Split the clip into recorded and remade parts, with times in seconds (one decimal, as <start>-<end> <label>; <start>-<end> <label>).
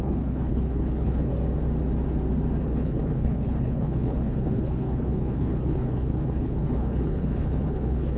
0.0-1.3 remade; 1.3-2.6 recorded; 2.6-8.2 remade